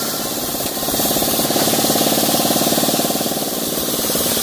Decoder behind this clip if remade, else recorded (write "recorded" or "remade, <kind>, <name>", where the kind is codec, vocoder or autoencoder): remade, vocoder, BigVGAN v2